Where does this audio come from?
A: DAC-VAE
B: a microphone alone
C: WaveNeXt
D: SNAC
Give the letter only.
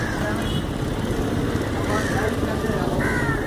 B